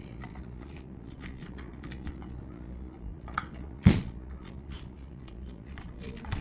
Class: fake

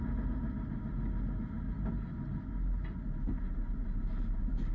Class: real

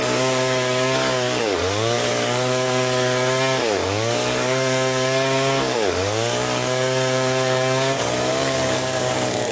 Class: fake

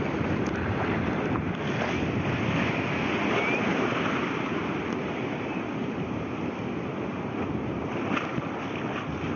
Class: real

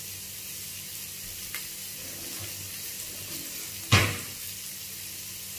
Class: real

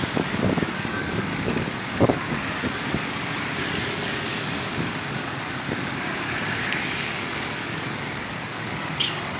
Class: fake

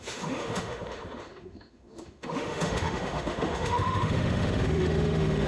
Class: fake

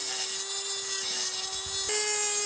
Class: real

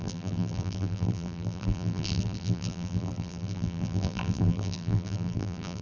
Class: fake